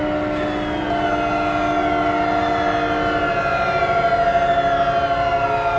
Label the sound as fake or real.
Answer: real